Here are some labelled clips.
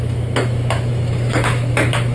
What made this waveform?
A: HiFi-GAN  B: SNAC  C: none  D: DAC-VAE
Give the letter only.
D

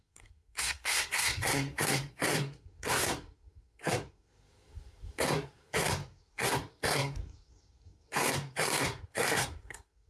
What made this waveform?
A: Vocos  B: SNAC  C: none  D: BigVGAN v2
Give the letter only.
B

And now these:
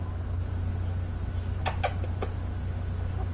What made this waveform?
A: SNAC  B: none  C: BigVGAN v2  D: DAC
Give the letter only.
B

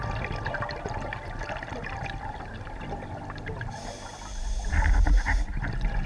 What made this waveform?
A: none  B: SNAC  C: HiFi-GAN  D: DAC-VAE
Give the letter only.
A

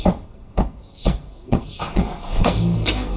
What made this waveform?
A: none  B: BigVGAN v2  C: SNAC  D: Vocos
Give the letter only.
C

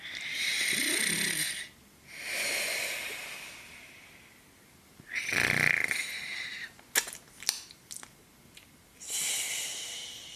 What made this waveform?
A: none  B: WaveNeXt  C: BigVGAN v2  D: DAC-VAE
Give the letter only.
A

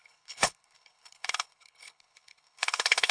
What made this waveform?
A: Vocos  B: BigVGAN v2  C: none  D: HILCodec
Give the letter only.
D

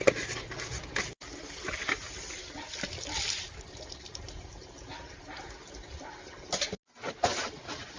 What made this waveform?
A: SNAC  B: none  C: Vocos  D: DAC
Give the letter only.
B